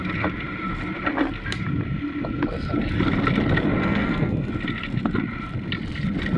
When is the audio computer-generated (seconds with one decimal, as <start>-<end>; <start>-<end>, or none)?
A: 3.8-4.5